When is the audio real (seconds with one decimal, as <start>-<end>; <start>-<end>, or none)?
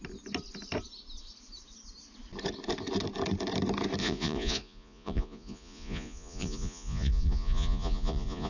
0.0-4.0